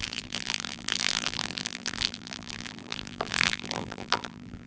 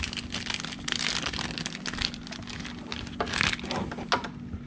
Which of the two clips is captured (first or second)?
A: second